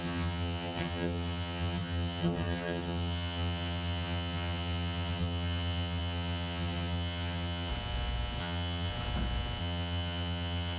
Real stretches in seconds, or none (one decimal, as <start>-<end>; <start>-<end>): 7.7-8.4; 8.9-9.6